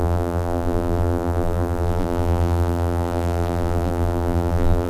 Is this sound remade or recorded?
remade